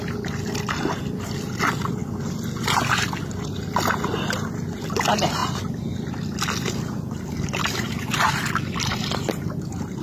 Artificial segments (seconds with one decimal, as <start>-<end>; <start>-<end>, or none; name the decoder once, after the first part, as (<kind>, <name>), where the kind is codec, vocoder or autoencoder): 0.0-2.0 (vocoder, BigVGAN v2); 3.3-10.0